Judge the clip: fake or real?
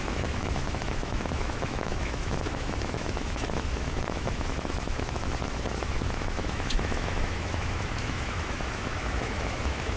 fake